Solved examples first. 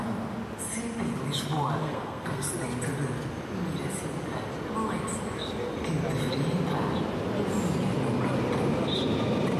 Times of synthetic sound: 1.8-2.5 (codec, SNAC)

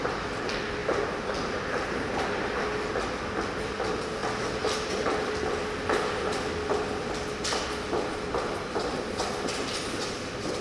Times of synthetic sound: none

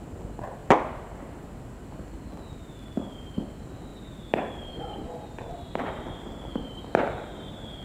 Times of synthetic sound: 3.9-6.8 (vocoder, BigVGAN v2)

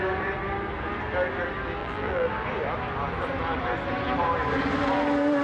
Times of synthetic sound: 1.8-2.3 (vocoder, BigVGAN v2)

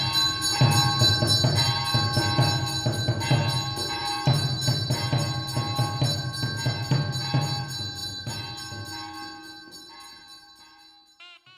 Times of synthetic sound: none

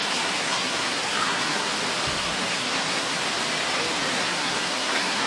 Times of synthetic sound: 0.0-1.7 (codec, SNAC); 2.2-3.2; 4.1-5.3

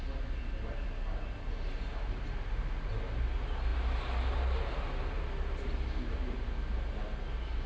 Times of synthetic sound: none

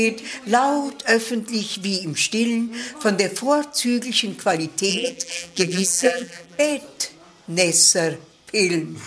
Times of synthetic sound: 4.9-6.6 (vocoder, BigVGAN v2)